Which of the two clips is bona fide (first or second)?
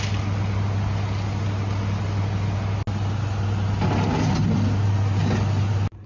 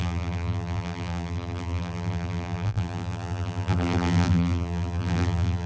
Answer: first